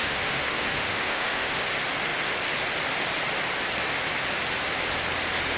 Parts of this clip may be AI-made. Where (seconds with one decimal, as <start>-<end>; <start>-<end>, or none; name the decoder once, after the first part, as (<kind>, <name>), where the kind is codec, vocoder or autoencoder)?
0.0-1.6 (autoencoder, DAC-VAE)